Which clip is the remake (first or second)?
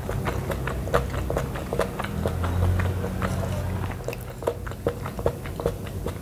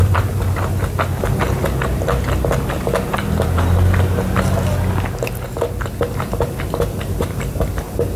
second